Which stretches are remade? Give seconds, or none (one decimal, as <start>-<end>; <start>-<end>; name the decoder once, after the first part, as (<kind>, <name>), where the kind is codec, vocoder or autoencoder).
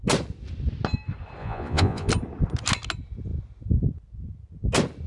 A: 1.4-2.1 (vocoder, Vocos)